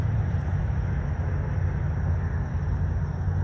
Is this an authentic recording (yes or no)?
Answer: yes